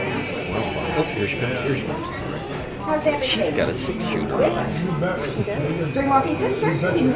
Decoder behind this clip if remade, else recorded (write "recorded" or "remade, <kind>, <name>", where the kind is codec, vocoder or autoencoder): recorded